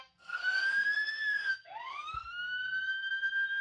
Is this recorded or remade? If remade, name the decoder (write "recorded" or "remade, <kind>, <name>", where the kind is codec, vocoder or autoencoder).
remade, codec, SNAC